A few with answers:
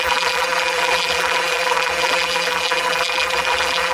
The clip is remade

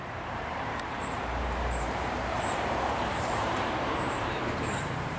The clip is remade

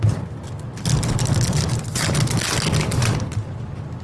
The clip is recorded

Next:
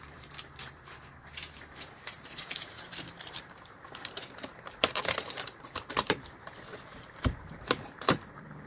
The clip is remade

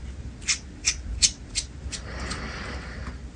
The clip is recorded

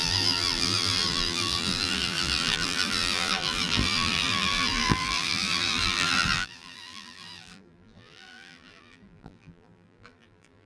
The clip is remade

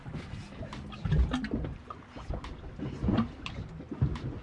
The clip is recorded